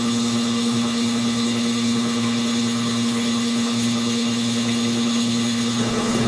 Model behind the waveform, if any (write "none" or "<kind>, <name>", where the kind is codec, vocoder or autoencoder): codec, HILCodec